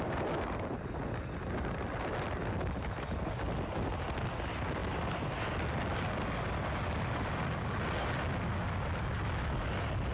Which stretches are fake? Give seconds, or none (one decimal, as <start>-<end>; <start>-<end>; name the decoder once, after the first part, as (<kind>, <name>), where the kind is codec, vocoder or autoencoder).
none